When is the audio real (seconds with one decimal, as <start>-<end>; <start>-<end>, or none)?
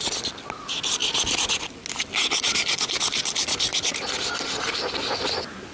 0.0-5.7